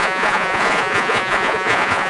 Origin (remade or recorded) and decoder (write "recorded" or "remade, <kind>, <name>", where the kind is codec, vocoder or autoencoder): remade, vocoder, Vocos